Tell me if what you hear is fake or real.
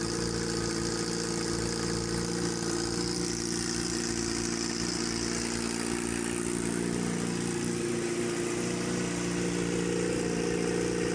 real